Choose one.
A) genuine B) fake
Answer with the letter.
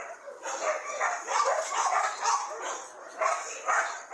B